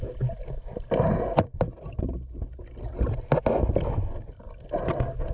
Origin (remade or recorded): recorded